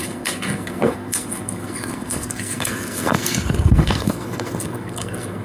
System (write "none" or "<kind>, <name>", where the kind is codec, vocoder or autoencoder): codec, SNAC